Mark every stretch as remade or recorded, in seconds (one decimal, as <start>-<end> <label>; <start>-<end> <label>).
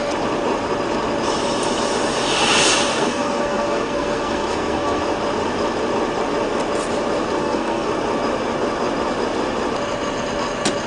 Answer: 0.0-2.9 recorded; 2.9-5.0 remade; 5.0-7.4 recorded; 7.4-7.9 remade; 7.9-10.9 recorded